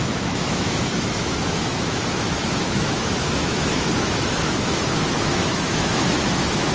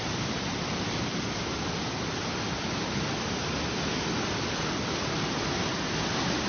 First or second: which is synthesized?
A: first